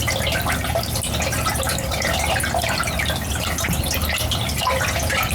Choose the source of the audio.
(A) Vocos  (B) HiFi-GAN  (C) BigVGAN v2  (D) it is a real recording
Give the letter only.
D